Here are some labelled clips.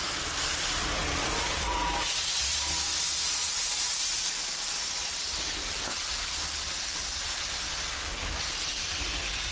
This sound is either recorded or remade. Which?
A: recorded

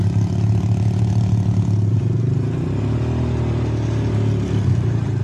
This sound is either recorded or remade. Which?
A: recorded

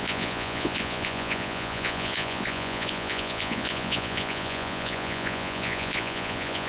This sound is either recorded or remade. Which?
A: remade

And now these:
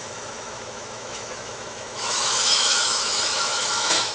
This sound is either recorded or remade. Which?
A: remade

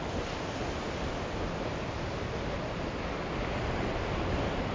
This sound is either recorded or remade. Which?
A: recorded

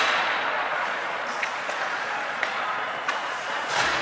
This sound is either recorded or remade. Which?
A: remade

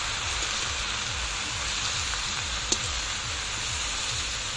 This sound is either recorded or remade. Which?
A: recorded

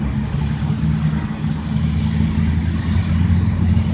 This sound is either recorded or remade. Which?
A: recorded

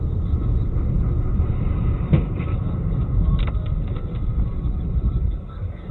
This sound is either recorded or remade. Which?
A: recorded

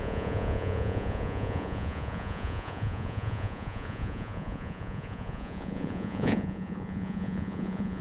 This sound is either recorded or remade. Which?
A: remade